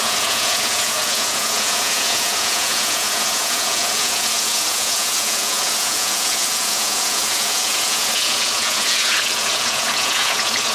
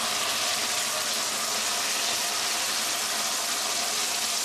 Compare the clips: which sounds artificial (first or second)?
first